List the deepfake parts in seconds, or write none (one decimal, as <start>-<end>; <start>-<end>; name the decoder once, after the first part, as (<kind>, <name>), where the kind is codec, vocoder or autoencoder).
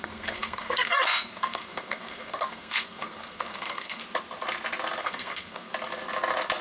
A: 0.0-4.0 (codec, SNAC); 5.0-5.7